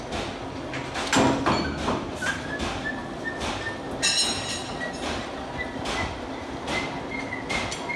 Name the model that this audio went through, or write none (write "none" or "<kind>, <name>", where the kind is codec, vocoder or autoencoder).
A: none